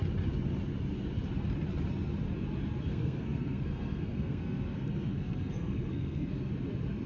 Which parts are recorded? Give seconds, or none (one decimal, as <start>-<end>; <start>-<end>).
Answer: 0.0-2.9; 6.5-7.1